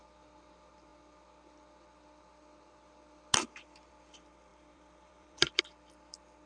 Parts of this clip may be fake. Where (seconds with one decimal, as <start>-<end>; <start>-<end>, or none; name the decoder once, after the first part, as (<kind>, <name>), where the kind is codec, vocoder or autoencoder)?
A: 4.5-5.6 (vocoder, BigVGAN v2)